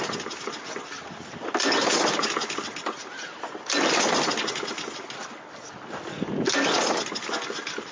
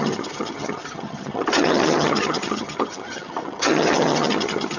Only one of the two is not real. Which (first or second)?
second